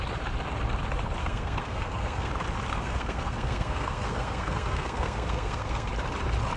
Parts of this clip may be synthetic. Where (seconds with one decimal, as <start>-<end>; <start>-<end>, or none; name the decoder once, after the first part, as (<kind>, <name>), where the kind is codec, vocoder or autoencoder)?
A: 1.2-2.3 (codec, SNAC); 2.7-5.9